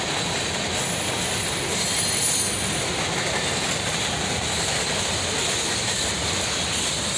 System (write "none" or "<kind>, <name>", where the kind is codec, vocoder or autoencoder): none